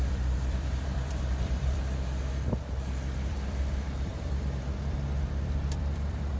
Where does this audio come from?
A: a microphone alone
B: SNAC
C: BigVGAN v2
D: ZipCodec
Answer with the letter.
C